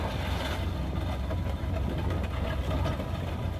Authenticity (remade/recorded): recorded